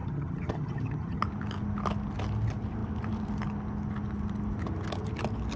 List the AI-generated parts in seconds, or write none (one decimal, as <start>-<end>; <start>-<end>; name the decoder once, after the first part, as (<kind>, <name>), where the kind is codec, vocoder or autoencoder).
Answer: 0.0-1.2 (vocoder, HiFi-GAN)